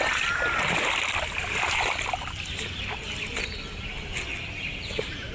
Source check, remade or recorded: remade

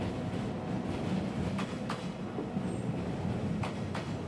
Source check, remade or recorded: recorded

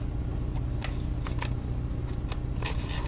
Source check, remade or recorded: recorded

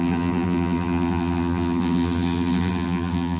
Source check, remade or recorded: remade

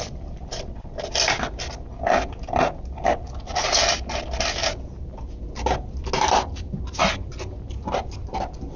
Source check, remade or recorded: recorded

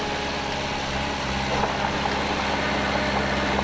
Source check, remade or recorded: recorded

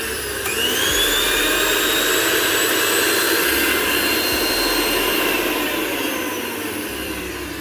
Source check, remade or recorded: remade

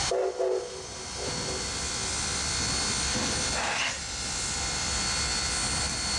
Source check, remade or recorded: recorded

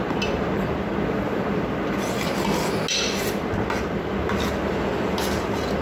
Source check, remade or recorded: recorded